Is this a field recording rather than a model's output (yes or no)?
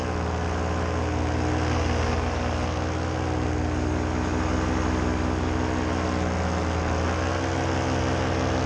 yes